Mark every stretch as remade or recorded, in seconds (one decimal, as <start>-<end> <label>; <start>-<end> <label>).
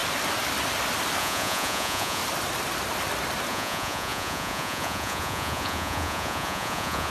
0.0-1.2 recorded; 1.2-2.2 remade; 2.2-3.5 recorded; 3.5-7.1 remade